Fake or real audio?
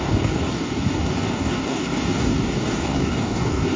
fake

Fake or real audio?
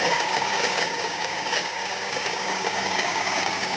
fake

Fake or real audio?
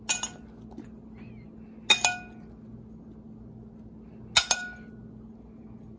real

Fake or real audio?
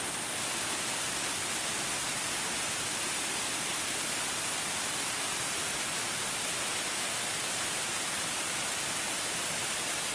real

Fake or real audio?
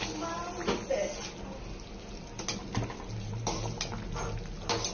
real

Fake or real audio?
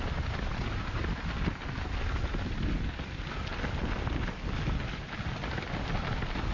real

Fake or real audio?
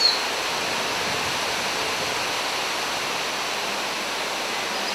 real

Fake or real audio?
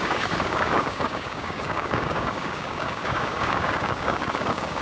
fake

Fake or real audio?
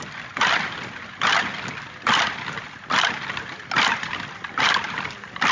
real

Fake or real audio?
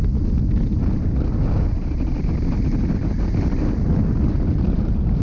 real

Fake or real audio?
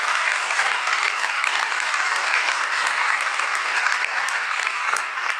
fake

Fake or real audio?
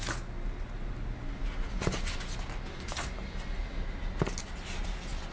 real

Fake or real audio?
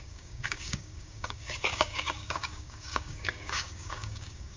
fake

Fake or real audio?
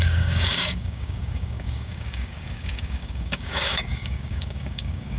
fake